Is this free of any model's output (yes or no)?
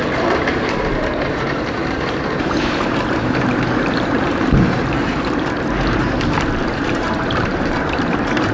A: no